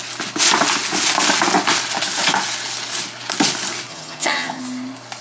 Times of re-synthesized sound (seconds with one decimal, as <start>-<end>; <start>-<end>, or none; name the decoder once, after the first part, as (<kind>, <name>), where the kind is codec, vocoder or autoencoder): 3.9-4.6 (vocoder, HiFi-GAN)